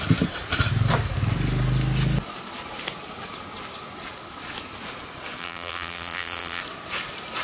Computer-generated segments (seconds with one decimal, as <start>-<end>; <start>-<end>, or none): 5.4-6.6